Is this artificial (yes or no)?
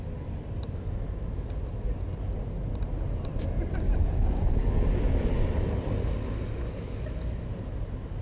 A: no